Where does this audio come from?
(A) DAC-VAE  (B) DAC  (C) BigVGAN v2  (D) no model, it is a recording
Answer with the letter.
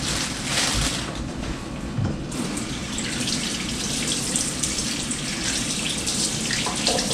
C